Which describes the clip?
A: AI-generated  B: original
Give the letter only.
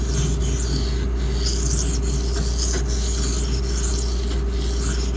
B